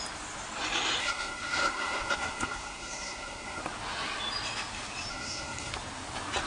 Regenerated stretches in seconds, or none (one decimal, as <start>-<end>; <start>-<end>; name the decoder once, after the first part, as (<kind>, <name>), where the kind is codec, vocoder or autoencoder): 1.0-3.6 (codec, SNAC); 5.1-5.7